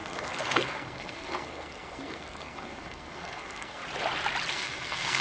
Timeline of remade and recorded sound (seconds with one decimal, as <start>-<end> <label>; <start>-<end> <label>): 0.0-3.8 remade; 3.8-4.5 recorded; 4.5-5.2 remade